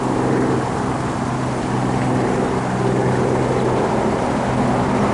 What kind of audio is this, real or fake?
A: real